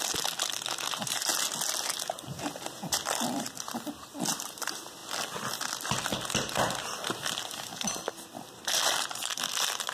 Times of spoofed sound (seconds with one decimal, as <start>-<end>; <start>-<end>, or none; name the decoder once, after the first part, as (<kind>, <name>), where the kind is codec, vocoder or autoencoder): 0.0-1.3 (vocoder, BigVGAN v2); 3.1-9.9